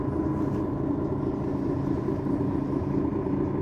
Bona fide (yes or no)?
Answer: yes